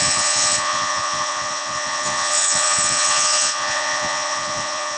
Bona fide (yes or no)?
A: no